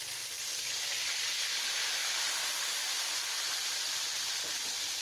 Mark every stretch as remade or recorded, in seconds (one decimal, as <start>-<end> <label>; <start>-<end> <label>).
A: 0.0-5.0 recorded